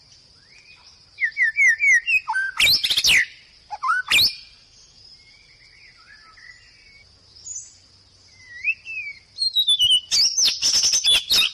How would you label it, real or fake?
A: real